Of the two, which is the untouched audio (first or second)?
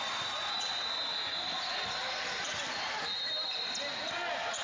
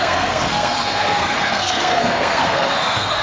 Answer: first